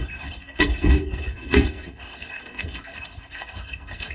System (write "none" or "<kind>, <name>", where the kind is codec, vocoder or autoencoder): codec, SNAC